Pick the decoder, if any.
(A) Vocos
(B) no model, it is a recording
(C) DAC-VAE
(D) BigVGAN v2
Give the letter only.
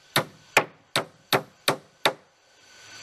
B